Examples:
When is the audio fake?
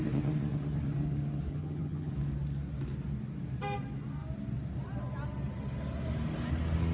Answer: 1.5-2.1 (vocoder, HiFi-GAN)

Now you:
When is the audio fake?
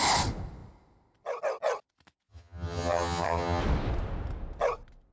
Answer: 2.3-3.6 (vocoder, HiFi-GAN)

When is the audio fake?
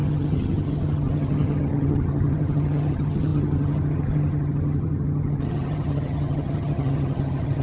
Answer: 0.0-7.6 (vocoder, HiFi-GAN)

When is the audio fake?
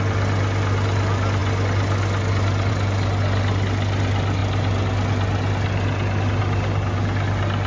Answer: none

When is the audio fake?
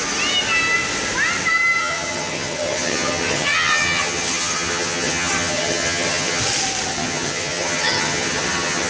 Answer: 1.8-6.4 (vocoder, HiFi-GAN); 6.9-8.9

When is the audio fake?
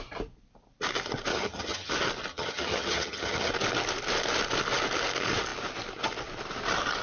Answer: 1.3-1.9 (vocoder, HiFi-GAN); 2.3-3.5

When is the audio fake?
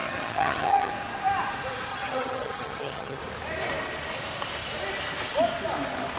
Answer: 0.0-0.9 (vocoder, HiFi-GAN); 1.9-3.2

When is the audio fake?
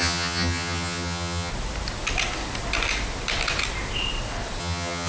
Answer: 0.0-1.5 (vocoder, HiFi-GAN); 4.6-5.1